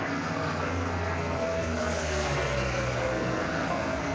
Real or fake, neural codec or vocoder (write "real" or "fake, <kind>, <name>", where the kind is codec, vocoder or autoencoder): fake, codec, SNAC